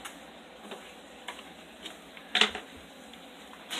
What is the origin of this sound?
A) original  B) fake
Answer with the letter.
A